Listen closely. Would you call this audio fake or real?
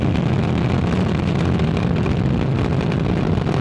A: real